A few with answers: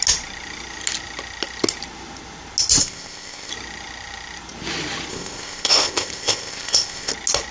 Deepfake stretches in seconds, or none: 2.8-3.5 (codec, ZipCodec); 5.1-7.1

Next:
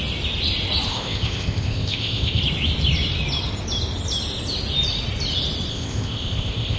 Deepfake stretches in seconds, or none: 0.9-2.4 (codec, ZipCodec); 5.7-6.8